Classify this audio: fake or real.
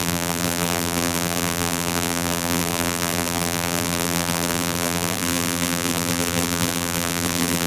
fake